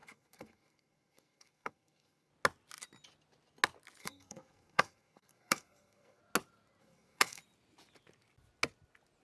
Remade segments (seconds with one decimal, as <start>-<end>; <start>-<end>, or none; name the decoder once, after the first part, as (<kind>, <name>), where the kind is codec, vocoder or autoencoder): 0.0-2.3 (codec, SNAC); 4.0-6.2; 6.8-7.4